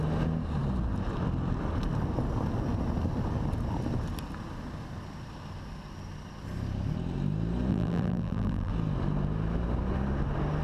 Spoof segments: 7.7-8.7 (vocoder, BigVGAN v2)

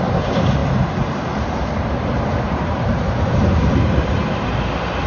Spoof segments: 0.0-4.2 (vocoder, BigVGAN v2)

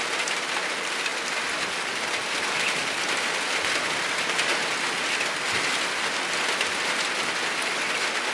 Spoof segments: none

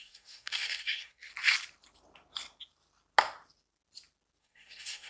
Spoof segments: 0.0-1.3 (codec, SNAC); 4.4-5.1

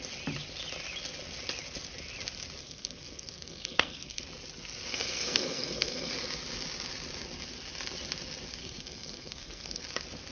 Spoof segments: 2.6-4.2 (codec, SNAC); 4.9-6.1; 8.6-9.8

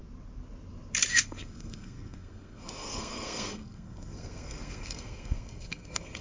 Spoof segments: 1.1-6.2 (codec, SNAC)